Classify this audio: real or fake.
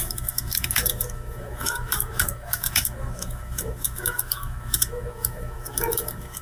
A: fake